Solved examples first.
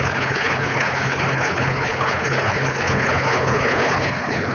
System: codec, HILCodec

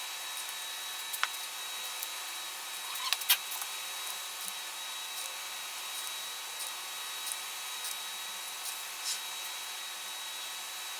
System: none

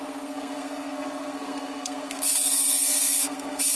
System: codec, SNAC